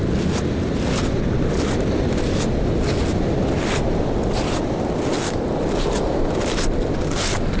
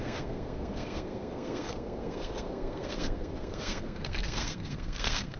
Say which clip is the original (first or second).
first